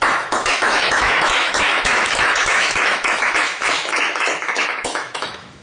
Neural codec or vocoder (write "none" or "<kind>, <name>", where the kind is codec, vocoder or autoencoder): autoencoder, DAC-VAE